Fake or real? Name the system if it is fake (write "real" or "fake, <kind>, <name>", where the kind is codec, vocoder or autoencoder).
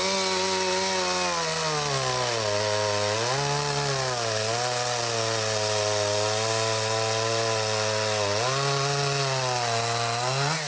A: real